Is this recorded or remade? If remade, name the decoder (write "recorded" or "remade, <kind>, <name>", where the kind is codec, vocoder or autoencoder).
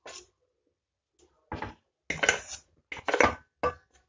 recorded